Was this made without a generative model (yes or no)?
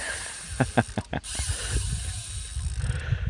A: yes